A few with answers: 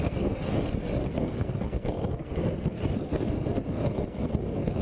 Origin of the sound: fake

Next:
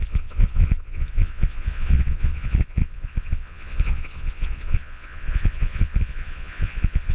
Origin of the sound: fake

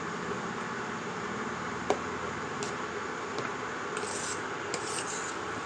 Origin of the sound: real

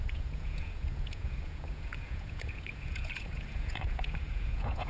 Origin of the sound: fake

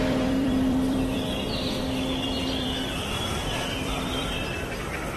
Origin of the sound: fake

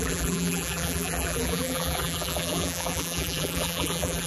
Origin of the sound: fake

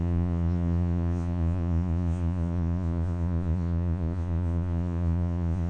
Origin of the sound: fake